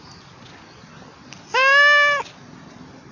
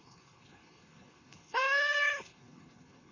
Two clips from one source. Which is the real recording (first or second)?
first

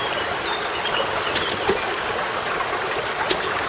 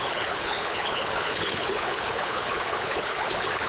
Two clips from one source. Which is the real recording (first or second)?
first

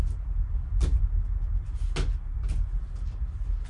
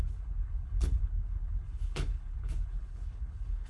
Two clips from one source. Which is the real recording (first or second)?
first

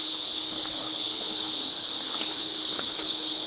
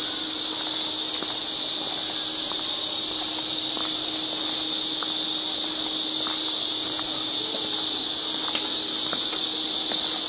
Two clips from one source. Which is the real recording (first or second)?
second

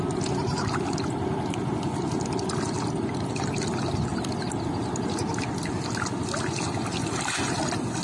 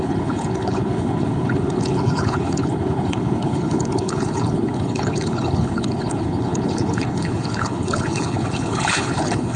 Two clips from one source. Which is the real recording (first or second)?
first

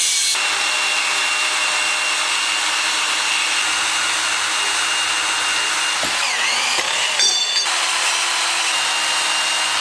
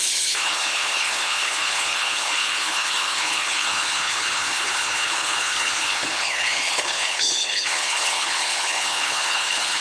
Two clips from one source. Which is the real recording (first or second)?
first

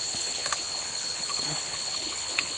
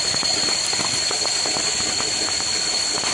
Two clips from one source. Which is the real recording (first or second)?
second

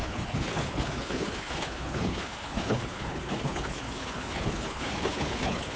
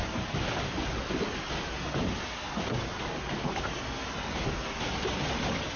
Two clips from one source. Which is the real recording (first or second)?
second